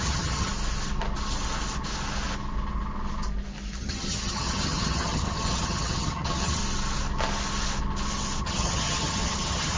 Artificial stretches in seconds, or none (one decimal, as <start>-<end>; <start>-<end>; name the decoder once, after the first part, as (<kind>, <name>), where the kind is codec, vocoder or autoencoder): 0.0-0.5 (vocoder, HiFi-GAN); 3.8-6.6; 8.4-9.8

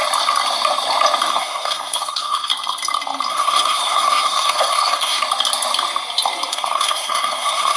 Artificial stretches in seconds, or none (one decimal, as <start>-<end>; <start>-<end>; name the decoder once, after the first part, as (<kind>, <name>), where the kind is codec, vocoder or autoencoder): 1.3-2.5 (codec, SNAC); 3.3-5.2; 6.5-7.8

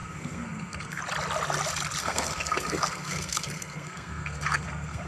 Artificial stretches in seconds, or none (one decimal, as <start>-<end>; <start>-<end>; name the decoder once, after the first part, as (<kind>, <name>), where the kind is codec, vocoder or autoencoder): 0.0-1.0 (codec, SNAC); 2.0-5.1

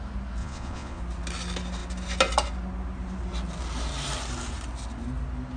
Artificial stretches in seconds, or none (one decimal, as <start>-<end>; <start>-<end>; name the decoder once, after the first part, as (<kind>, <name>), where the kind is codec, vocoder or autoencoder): 0.4-1.0 (vocoder, Vocos)